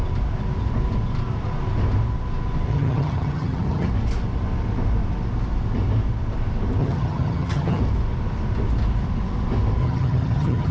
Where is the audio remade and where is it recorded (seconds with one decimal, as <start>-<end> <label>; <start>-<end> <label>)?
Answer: 0.0-2.7 recorded; 2.7-3.9 remade; 3.9-6.8 recorded; 6.8-7.8 remade; 7.8-9.8 recorded; 9.8-10.7 remade

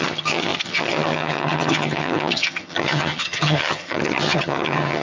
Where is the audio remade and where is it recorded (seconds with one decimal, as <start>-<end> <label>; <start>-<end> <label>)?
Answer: 0.0-5.0 remade

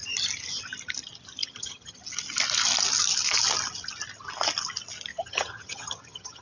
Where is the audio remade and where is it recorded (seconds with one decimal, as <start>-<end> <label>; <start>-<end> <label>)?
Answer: 0.0-1.4 recorded; 1.4-2.0 remade; 2.0-5.1 recorded; 5.1-6.4 remade

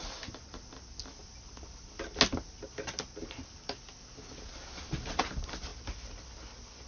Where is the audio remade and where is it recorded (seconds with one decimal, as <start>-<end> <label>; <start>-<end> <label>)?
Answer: 0.0-6.9 recorded

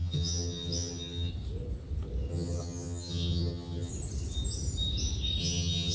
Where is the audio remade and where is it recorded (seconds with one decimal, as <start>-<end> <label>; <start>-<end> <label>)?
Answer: 0.0-1.3 remade; 1.3-2.3 recorded; 2.3-3.9 remade; 3.9-5.4 recorded; 5.4-5.9 remade

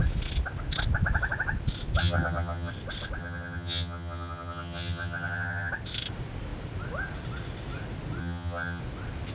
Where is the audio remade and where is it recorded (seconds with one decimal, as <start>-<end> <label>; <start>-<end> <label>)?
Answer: 0.0-2.0 recorded; 2.0-2.7 remade; 2.7-3.2 recorded; 3.2-5.7 remade; 5.7-8.2 recorded; 8.2-8.8 remade; 8.8-9.3 recorded